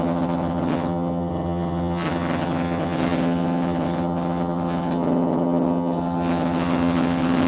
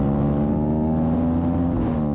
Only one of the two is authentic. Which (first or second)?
second